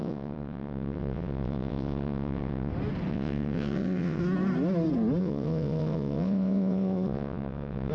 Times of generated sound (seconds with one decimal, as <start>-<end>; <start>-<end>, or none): 0.0-2.7; 3.1-4.2; 5.2-7.9